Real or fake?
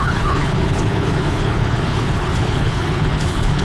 fake